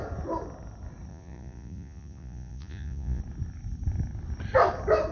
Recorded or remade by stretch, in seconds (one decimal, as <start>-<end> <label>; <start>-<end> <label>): 0.0-1.1 recorded; 1.1-3.2 remade; 3.2-5.1 recorded